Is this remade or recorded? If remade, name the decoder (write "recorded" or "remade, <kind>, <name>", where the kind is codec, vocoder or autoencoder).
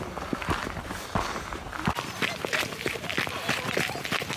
recorded